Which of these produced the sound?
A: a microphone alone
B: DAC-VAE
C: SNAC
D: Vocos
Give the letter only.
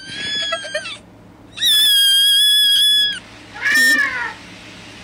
A